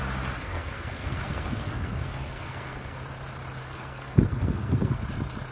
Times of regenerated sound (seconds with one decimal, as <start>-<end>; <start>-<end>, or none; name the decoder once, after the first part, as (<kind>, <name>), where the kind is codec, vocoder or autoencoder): 0.4-3.0 (codec, SNAC); 3.6-5.0